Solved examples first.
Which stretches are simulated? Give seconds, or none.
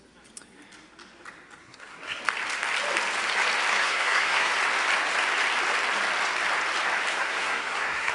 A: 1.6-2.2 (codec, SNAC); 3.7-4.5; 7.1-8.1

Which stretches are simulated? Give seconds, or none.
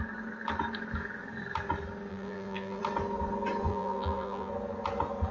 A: 2.1-2.8 (vocoder, BigVGAN v2); 3.7-4.5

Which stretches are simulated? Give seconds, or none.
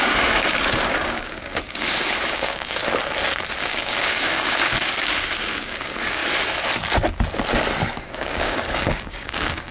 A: 0.0-2.8 (codec, DAC); 3.6-6.2; 8.0-9.7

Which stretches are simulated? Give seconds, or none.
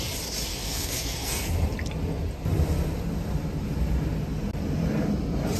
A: 0.5-1.5 (codec, SNAC)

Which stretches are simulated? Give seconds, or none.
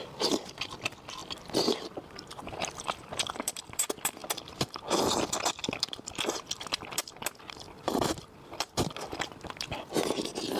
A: 0.0-4.2 (vocoder, BigVGAN v2); 5.5-10.6